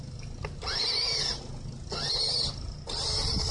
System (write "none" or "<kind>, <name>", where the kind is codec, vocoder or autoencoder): none